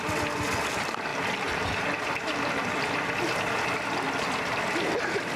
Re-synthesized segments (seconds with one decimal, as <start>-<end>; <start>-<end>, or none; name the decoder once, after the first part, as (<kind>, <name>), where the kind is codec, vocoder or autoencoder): none